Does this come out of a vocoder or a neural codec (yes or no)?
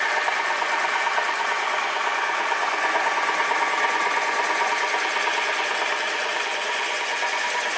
yes